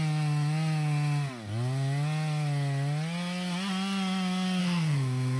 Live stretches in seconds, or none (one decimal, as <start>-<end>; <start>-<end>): 0.0-4.6